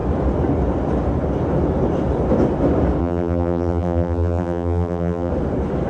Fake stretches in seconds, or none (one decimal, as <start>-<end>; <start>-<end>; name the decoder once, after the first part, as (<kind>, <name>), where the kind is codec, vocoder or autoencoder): 3.0-5.3 (vocoder, BigVGAN v2)